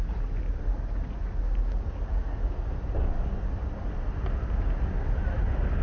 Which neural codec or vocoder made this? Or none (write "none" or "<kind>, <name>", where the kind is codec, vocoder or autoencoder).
none